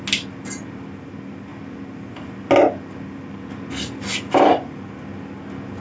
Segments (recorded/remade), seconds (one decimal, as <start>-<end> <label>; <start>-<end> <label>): 0.0-5.8 recorded